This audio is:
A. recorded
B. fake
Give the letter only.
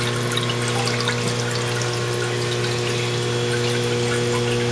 A